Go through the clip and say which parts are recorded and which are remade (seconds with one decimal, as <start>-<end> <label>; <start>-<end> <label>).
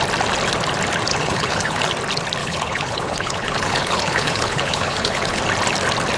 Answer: 0.0-1.1 recorded; 1.1-1.8 remade; 1.8-2.4 recorded; 2.4-5.4 remade; 5.4-6.2 recorded